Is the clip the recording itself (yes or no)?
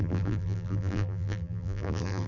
no